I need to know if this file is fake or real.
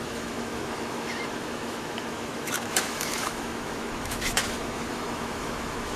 fake